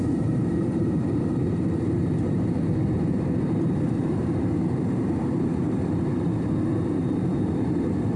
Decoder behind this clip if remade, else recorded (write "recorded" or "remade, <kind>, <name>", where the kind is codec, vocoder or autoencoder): remade, vocoder, BigVGAN v2